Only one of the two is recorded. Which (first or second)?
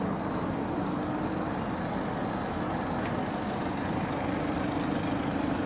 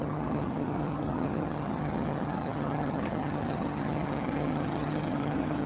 first